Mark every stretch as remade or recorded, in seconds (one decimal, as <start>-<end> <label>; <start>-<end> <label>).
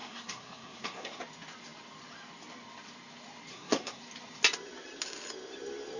0.0-1.2 remade; 1.2-3.5 recorded; 3.5-4.0 remade; 4.0-6.0 recorded